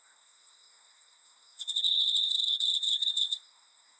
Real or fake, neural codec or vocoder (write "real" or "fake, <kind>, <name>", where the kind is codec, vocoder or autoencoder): fake, codec, SNAC